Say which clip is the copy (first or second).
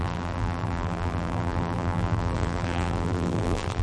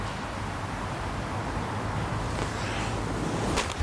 first